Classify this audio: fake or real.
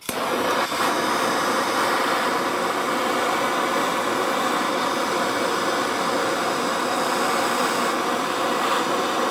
real